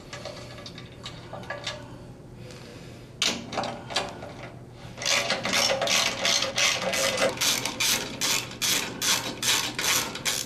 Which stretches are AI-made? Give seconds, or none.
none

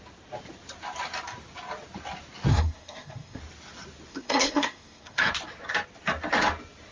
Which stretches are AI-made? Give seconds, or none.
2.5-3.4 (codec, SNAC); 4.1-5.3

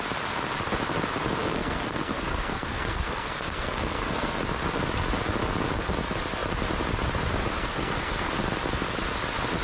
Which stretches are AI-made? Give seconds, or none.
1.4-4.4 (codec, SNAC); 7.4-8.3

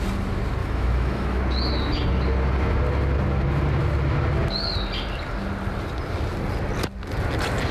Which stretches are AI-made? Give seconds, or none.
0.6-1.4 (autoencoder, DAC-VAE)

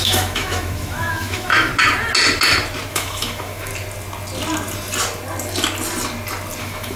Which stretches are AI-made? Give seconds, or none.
0.0-1.7 (autoencoder, DAC-VAE); 2.9-3.7; 6.6-7.0